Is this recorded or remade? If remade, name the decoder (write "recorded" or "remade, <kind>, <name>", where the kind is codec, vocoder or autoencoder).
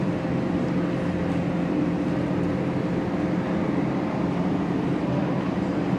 recorded